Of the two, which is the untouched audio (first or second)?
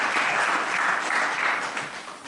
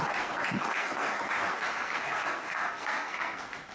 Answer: first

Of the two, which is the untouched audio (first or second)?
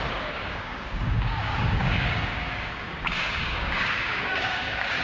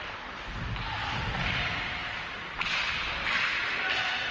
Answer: second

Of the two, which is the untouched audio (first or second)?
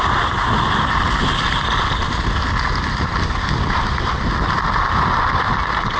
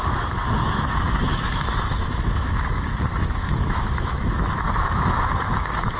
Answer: first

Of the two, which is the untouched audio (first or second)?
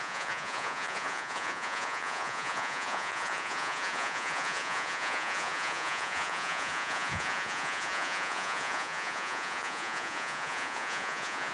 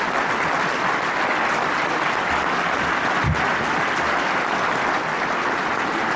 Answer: second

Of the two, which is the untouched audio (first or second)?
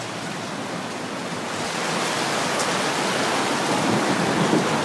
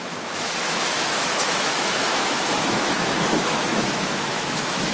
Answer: first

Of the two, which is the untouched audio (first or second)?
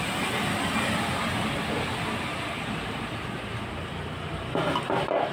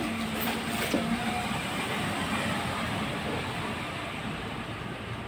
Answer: first